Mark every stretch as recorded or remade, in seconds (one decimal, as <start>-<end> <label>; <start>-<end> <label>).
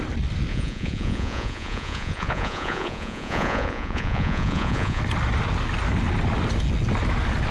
0.0-0.5 recorded; 0.5-5.0 remade; 5.0-7.5 recorded